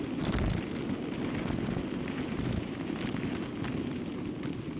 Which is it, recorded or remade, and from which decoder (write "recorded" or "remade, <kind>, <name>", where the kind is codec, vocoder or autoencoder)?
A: recorded